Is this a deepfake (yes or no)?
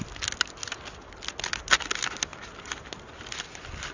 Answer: no